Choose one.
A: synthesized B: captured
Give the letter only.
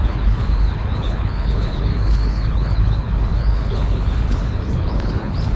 A